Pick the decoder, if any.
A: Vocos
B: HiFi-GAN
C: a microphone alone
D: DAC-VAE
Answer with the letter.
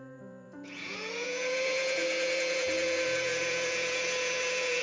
A